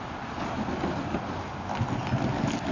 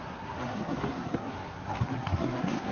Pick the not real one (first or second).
second